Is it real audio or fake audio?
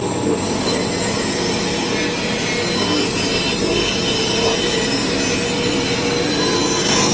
real